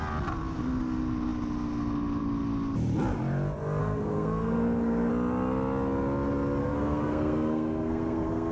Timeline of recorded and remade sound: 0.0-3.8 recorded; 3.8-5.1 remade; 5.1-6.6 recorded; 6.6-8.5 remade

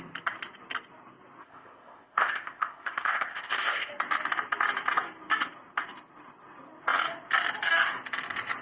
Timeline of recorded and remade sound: 0.0-1.4 recorded; 1.4-3.9 remade; 3.9-8.6 recorded